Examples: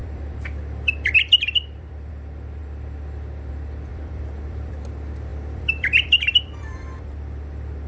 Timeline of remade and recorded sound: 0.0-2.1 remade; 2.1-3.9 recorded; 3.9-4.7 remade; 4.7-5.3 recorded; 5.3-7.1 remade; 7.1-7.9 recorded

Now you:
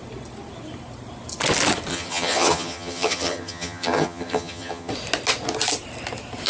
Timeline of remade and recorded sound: 0.0-1.9 recorded; 1.9-4.9 remade; 4.9-6.5 recorded

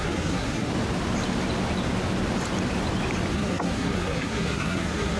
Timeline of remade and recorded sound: 0.0-0.7 remade; 0.7-3.3 recorded; 3.3-5.2 remade

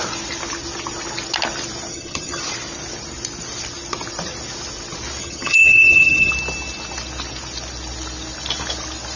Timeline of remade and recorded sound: 0.0-1.9 recorded; 1.9-2.4 remade; 2.4-5.2 recorded; 5.2-6.3 remade; 6.3-9.2 recorded

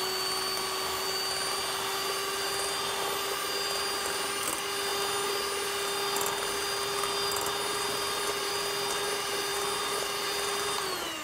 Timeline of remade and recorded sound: 0.0-11.2 recorded

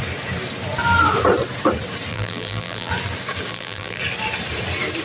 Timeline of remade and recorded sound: 0.0-2.1 recorded; 2.1-2.9 remade; 2.9-3.5 recorded; 3.5-4.0 remade; 4.0-5.0 recorded

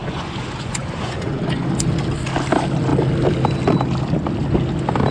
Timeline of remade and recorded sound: 0.0-1.4 remade; 1.4-5.1 recorded